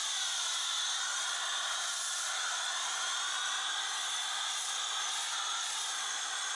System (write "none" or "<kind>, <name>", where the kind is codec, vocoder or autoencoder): none